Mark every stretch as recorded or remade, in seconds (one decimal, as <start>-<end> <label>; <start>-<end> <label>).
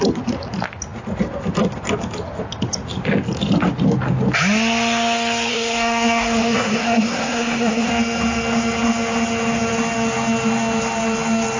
0.0-5.5 recorded; 5.5-7.9 remade; 7.9-11.6 recorded